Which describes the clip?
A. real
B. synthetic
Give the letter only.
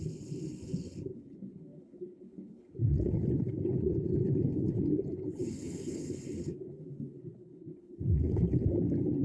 B